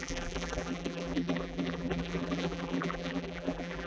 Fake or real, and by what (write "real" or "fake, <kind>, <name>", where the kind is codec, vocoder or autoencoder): fake, vocoder, BigVGAN v2